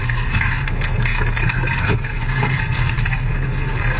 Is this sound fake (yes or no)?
yes